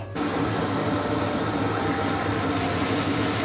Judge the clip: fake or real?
real